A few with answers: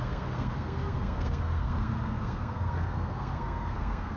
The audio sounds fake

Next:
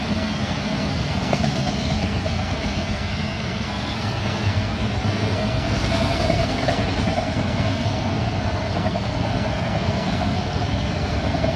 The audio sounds fake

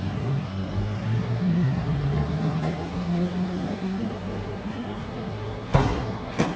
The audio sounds fake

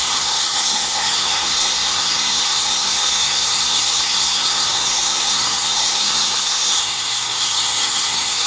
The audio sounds fake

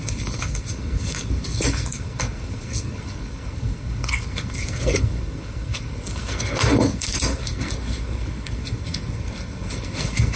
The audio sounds fake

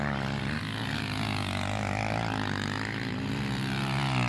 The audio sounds real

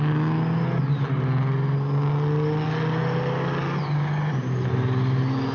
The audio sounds real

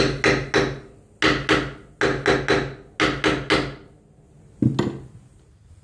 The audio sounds real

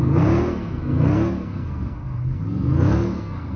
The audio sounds fake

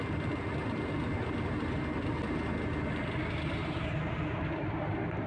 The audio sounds real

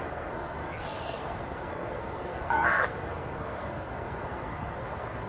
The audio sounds fake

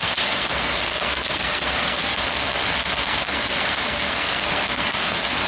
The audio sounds fake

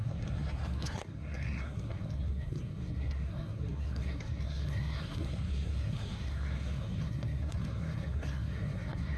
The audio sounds fake